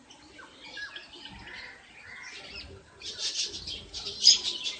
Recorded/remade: recorded